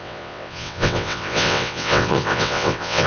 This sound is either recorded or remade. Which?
remade